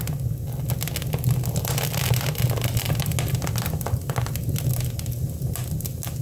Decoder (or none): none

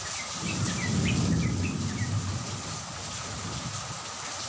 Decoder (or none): none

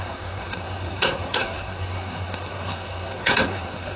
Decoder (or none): codec, SNAC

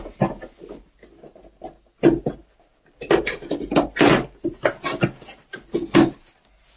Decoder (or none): none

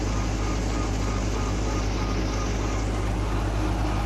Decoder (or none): none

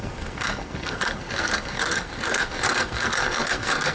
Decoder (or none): codec, SNAC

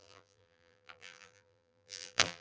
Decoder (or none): vocoder, BigVGAN v2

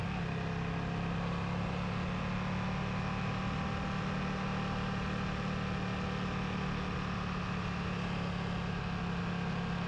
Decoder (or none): none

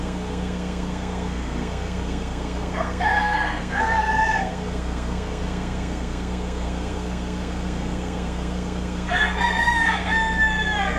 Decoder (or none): codec, SNAC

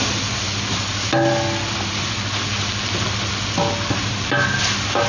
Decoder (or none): none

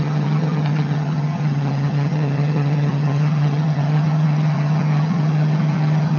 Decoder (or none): vocoder, HiFi-GAN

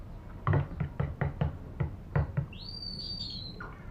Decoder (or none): none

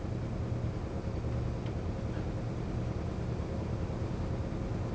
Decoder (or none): none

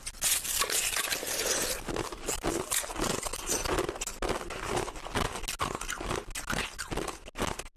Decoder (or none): none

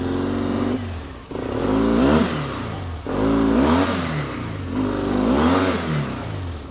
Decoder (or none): none